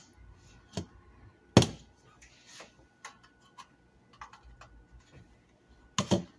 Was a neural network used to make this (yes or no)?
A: no